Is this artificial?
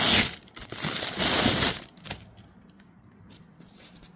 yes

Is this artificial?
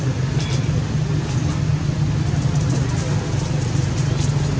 no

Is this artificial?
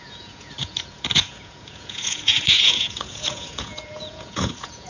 yes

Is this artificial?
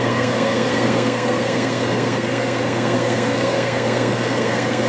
yes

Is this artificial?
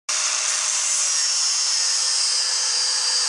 no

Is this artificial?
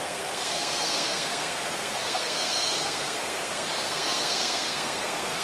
yes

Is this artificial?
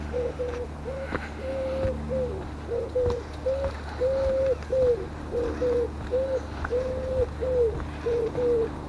no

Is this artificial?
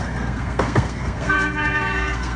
yes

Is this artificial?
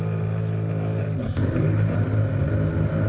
no